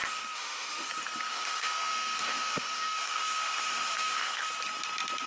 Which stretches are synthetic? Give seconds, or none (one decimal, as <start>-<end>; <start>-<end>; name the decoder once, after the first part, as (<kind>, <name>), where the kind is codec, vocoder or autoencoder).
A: 0.0-0.9 (autoencoder, DAC-VAE); 1.3-4.5